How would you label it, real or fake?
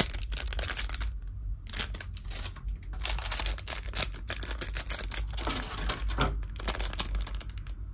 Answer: real